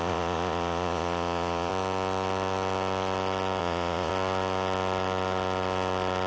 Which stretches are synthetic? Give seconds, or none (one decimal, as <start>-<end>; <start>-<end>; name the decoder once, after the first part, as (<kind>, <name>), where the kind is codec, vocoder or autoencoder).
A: 0.0-1.7 (vocoder, Vocos); 3.6-4.1